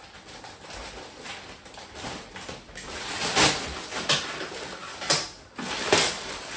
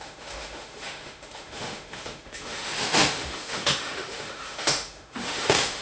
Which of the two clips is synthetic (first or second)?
second